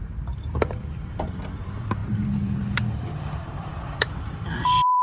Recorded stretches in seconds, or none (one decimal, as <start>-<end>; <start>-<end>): 2.0-2.7